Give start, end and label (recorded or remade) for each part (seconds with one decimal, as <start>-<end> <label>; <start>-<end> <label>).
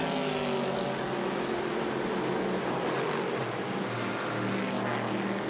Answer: 0.0-5.5 recorded